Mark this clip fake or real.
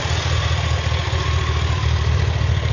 real